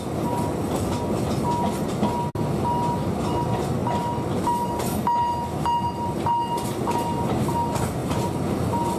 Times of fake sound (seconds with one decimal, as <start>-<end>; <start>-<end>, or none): 8.0-9.0